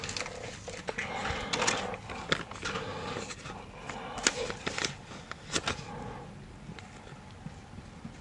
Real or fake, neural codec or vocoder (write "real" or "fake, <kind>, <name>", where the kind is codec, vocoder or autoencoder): real